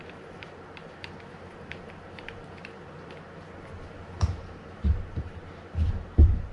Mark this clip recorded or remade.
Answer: remade